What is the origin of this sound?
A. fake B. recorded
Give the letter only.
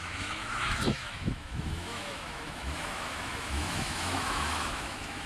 A